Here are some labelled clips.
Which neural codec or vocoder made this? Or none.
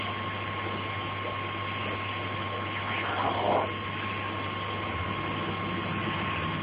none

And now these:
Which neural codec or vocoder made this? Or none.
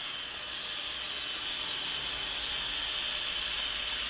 none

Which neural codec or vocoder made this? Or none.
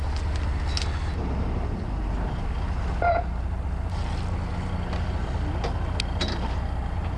none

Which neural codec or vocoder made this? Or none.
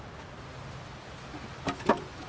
none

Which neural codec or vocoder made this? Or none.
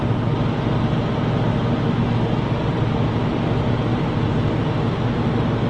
none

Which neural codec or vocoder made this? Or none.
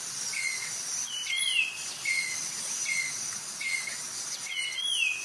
none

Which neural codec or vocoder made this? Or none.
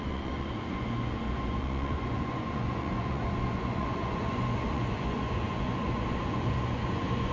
vocoder, Vocos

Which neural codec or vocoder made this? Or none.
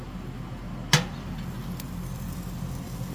none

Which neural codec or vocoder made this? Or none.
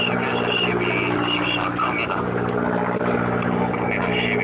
none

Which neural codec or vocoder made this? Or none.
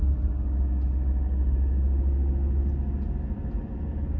none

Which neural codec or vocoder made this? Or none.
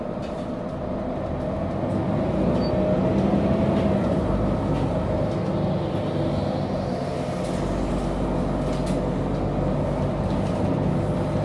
none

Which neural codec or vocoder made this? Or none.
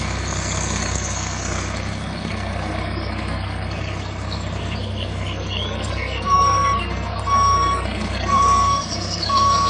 codec, SNAC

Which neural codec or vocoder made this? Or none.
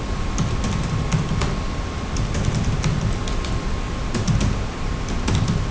none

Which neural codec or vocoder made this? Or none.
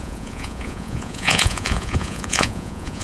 vocoder, Vocos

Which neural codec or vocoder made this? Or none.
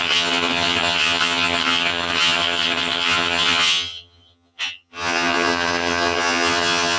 vocoder, HiFi-GAN